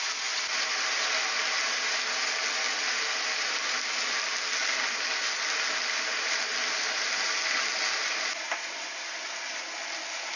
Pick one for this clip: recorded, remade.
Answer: recorded